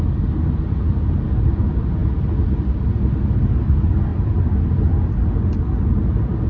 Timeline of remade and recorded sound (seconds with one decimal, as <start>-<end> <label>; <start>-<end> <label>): 0.0-6.5 recorded